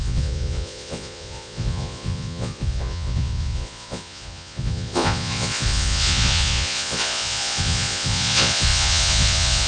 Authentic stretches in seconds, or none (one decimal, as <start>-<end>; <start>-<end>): none